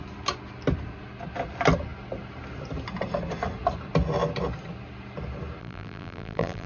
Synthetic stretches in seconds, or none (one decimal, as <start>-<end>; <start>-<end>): 5.6-6.7